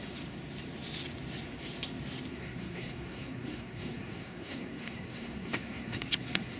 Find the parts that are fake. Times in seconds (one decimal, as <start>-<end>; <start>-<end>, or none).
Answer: 2.3-6.6